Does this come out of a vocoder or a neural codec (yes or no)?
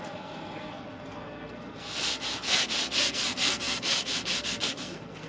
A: yes